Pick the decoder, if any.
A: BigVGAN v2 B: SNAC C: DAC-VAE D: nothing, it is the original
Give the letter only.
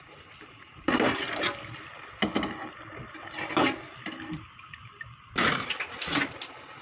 D